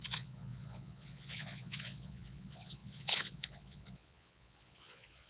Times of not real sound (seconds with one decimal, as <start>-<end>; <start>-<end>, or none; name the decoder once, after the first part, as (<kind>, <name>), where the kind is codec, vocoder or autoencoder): 0.0-5.3 (vocoder, Vocos)